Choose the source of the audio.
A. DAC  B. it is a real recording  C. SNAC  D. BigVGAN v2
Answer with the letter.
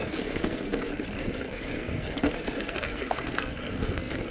C